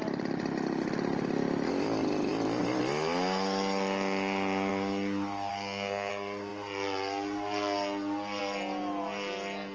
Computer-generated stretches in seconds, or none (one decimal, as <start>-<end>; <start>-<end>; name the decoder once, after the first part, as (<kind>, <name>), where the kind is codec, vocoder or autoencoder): 5.5-6.1 (codec, SNAC)